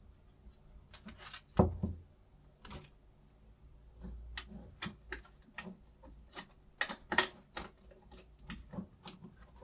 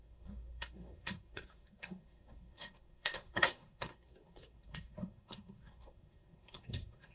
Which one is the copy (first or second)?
second